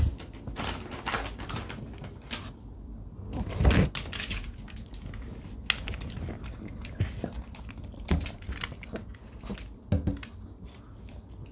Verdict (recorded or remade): recorded